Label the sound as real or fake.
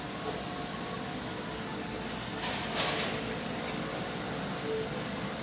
real